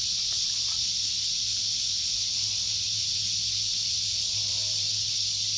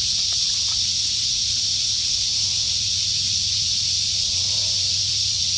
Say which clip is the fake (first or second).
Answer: second